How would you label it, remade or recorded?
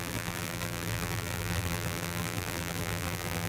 remade